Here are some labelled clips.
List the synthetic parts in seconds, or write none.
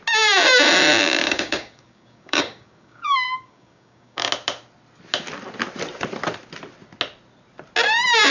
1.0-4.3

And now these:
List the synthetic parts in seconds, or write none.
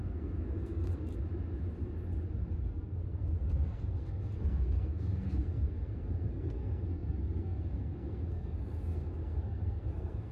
0.0-1.1; 2.6-10.3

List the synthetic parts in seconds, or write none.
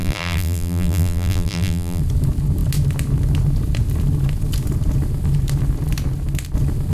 0.0-2.0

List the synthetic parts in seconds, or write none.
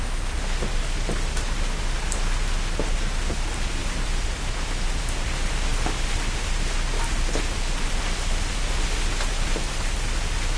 3.8-5.0; 9.3-9.9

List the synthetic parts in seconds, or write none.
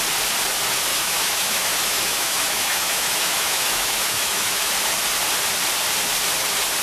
0.9-4.7